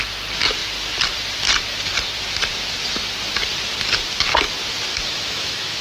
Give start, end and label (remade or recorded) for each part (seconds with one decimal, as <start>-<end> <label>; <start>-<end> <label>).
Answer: 0.0-4.9 recorded; 4.9-5.8 remade